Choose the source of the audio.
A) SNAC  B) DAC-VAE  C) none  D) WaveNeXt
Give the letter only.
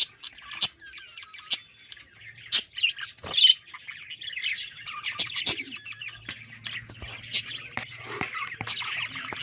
C